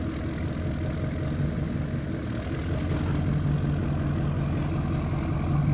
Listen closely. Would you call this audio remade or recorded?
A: recorded